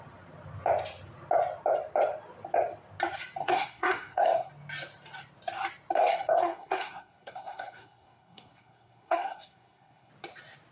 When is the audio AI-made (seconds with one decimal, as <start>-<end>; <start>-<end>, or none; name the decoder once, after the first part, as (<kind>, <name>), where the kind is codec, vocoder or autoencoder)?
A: 3.4-4.5 (codec, SNAC); 6.0-10.1